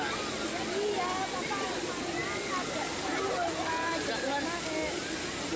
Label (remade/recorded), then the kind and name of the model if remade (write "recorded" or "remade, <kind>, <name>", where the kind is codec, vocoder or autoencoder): recorded